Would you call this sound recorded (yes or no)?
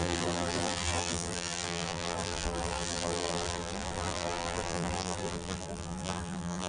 no